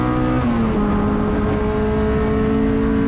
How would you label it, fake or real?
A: real